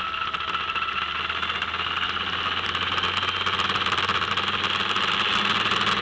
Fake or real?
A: real